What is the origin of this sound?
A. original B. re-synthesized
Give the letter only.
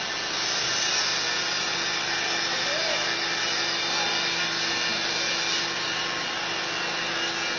A